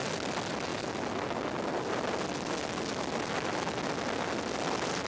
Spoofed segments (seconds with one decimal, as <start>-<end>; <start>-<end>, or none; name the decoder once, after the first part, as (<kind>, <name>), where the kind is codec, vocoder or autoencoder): none